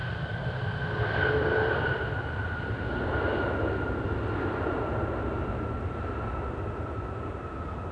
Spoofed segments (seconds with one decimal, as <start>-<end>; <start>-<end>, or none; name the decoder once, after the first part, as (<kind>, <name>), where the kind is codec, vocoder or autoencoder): none